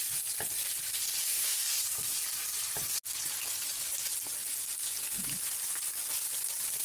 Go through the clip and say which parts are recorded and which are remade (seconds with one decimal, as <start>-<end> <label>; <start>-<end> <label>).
0.0-1.2 recorded; 1.2-1.8 remade; 1.8-6.8 recorded